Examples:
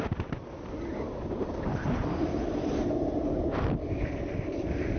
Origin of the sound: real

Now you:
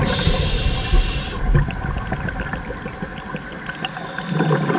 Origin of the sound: real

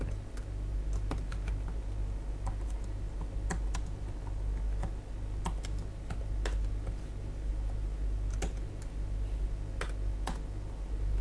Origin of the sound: real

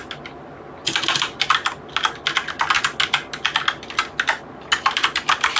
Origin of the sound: real